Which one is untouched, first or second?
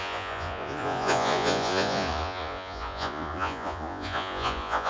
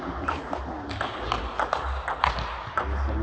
second